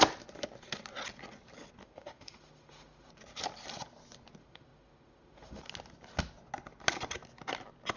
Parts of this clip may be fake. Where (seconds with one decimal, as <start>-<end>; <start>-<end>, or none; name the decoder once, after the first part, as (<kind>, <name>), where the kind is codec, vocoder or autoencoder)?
1.8-3.1 (autoencoder, DAC-VAE); 4.4-5.6

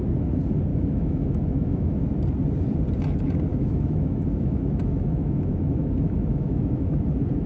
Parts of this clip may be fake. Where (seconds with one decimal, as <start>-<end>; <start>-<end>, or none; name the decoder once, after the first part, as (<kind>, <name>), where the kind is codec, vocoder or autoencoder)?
0.7-2.0 (autoencoder, DAC-VAE); 3.5-7.1

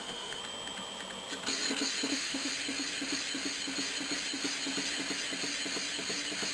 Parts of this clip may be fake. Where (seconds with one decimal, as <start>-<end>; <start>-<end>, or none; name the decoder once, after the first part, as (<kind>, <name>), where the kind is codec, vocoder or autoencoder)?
0.0-0.4 (autoencoder, DAC-VAE); 2.1-2.5

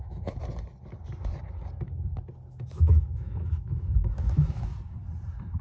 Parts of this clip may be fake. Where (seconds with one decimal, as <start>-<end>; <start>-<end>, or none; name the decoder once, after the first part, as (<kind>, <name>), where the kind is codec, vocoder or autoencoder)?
0.0-0.4 (autoencoder, DAC-VAE); 2.5-4.7

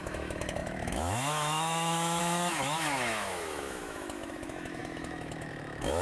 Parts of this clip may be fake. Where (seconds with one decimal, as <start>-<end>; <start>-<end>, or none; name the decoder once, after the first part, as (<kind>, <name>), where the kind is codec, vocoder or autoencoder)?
0.0-6.0 (autoencoder, DAC-VAE)

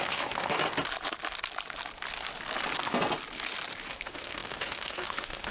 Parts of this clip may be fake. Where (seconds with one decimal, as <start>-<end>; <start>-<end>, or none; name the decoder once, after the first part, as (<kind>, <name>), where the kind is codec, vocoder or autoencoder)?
0.0-0.6 (autoencoder, DAC-VAE); 3.9-5.5

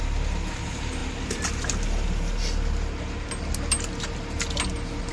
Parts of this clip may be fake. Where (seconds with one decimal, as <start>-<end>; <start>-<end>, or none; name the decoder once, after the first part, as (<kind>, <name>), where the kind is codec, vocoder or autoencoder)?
none

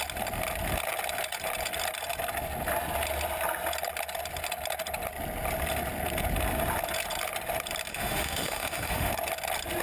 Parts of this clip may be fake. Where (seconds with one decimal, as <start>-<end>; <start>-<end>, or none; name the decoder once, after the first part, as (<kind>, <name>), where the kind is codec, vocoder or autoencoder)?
7.9-9.1 (autoencoder, DAC-VAE)